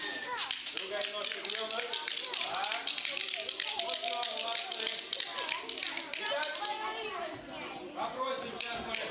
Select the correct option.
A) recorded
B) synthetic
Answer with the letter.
A